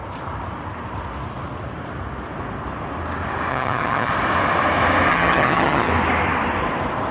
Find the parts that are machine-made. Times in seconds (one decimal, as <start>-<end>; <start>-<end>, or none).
3.5-4.1; 5.1-5.9